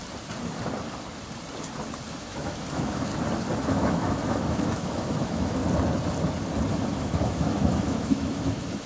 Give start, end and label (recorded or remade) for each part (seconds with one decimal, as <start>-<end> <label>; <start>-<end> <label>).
0.0-2.2 recorded; 2.2-3.1 remade; 3.1-3.7 recorded; 3.7-5.6 remade; 5.6-6.7 recorded; 6.7-8.9 remade